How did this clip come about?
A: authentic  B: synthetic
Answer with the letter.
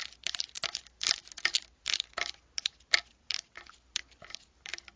A